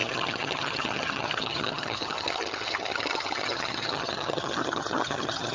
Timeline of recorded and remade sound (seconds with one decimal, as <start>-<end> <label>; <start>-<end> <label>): 0.0-5.5 remade